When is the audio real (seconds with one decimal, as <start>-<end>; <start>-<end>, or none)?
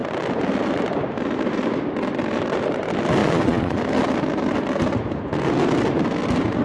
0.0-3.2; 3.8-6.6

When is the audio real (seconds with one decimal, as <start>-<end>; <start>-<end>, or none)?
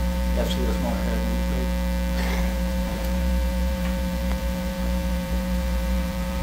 1.0-2.4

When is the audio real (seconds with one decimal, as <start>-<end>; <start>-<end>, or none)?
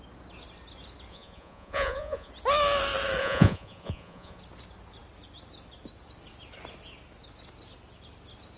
0.0-1.1; 2.3-3.2; 4.4-8.6